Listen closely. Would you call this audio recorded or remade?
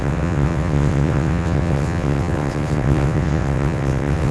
remade